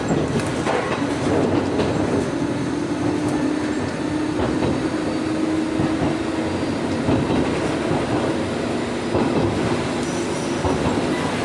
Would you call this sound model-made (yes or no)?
no